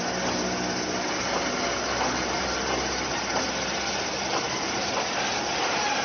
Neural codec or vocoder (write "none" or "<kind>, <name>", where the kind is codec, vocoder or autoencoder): none